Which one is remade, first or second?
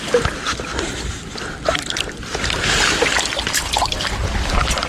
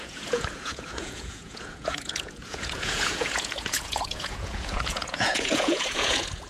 second